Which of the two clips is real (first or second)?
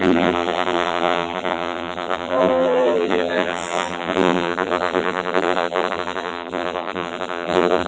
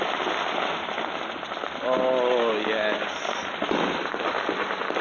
second